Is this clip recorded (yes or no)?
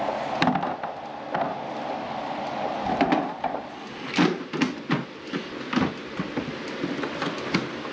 yes